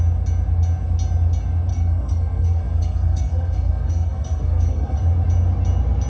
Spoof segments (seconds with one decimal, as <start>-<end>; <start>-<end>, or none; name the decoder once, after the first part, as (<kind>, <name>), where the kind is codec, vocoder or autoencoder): 1.7-5.0 (codec, SNAC)